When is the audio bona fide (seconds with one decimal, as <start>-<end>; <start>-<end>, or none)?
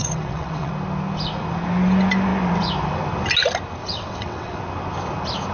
0.7-3.8; 4.6-5.5